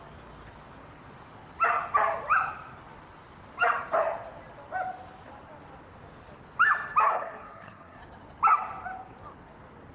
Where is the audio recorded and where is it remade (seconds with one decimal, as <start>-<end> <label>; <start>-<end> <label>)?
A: 0.0-7.1 recorded; 7.1-8.0 remade; 8.0-9.9 recorded